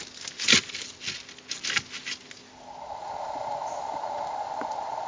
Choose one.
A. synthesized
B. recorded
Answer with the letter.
B